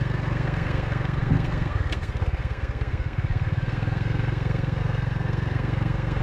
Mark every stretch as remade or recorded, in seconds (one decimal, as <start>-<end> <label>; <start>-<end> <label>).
0.0-6.2 remade